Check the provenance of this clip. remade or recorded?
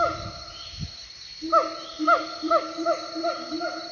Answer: recorded